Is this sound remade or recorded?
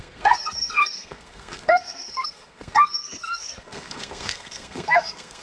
remade